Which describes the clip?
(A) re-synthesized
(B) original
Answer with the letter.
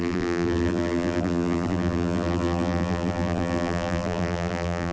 A